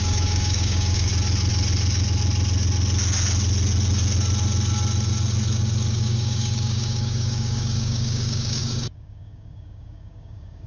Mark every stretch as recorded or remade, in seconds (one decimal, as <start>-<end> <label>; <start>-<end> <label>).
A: 0.0-1.1 remade; 1.1-5.9 recorded; 5.9-10.7 remade